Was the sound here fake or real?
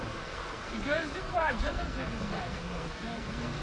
fake